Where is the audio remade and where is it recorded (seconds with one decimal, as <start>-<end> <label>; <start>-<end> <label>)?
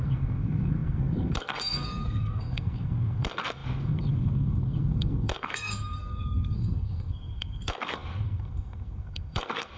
0.0-9.8 remade